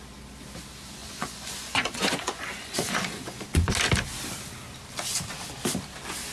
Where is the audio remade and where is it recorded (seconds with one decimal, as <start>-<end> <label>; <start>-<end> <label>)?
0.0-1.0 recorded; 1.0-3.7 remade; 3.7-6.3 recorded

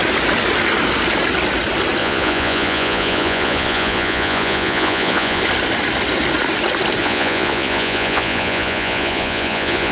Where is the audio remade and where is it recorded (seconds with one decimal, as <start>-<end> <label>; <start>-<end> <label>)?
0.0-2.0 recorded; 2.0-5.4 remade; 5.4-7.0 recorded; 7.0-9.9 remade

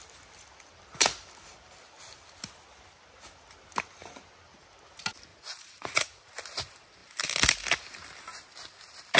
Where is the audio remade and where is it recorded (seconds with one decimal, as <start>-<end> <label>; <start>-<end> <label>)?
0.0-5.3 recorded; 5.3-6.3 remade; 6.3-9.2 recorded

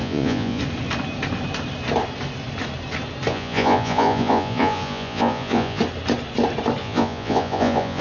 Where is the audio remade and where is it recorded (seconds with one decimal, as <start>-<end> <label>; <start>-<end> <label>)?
0.0-0.6 remade; 0.6-3.3 recorded; 3.3-5.8 remade; 5.8-6.8 recorded; 6.8-8.0 remade

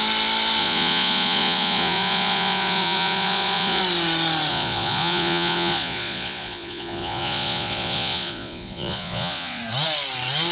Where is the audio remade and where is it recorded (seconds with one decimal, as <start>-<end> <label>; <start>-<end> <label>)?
0.0-0.6 recorded; 0.6-3.8 remade; 3.8-4.5 recorded; 4.5-9.6 remade; 9.6-10.5 recorded